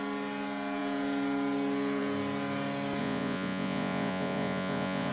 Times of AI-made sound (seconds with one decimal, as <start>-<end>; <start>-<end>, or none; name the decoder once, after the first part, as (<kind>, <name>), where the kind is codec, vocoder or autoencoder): 3.0-5.1 (vocoder, Vocos)